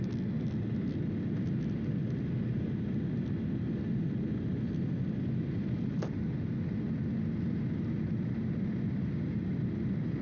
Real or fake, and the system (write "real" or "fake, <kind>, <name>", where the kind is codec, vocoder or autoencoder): real